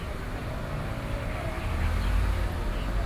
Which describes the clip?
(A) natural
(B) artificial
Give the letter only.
A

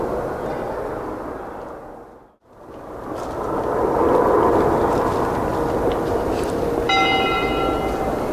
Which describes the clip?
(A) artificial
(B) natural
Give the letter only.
B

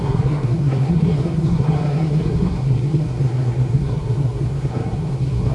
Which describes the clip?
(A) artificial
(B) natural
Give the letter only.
A